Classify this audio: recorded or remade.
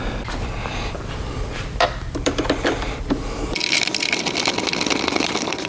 remade